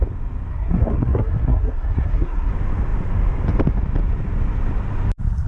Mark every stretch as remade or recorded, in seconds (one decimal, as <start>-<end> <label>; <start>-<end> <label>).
0.0-0.5 recorded; 0.5-2.5 remade; 2.5-5.5 recorded